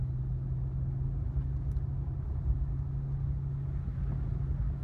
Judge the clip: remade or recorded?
recorded